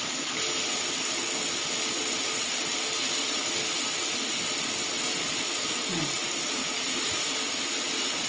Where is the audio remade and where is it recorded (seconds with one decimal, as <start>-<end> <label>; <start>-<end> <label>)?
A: 0.0-8.3 recorded